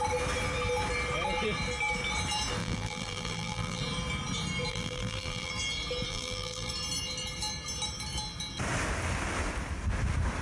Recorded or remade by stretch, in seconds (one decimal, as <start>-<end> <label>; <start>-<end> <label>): 0.0-2.6 recorded; 2.6-3.8 remade; 3.8-4.7 recorded; 4.7-5.5 remade; 5.5-6.1 recorded; 6.1-6.7 remade; 6.7-10.4 recorded